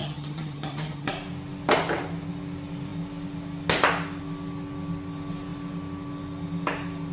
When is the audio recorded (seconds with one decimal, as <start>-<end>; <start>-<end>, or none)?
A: 1.1-7.1